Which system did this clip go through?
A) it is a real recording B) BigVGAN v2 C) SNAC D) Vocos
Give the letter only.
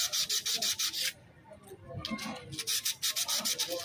A